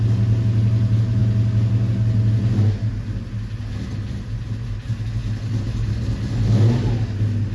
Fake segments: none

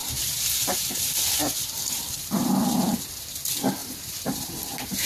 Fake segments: 0.0-3.1; 3.8-5.1

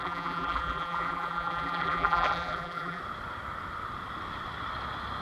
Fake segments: 0.0-3.0

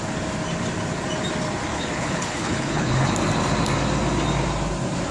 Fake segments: 1.7-3.1

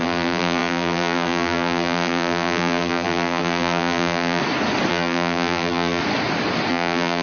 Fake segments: 0.0-4.4; 4.9-6.0; 6.7-7.2

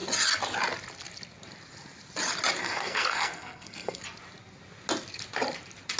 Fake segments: 2.6-4.0

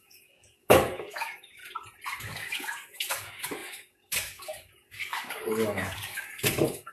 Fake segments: 0.0-1.6; 2.2-6.9

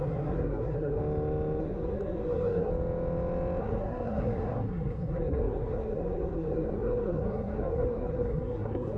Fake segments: 0.0-1.0; 1.6-2.7; 3.6-9.0